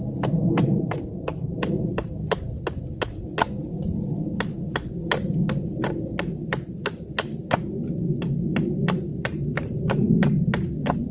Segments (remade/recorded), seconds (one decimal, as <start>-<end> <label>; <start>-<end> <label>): 0.0-1.3 recorded; 1.3-2.1 remade; 2.1-9.1 recorded; 9.1-10.5 remade; 10.5-11.1 recorded